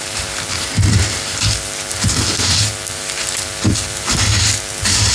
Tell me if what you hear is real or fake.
real